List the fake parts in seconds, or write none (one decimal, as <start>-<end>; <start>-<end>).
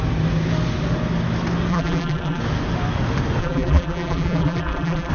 1.7-2.4; 3.4-5.1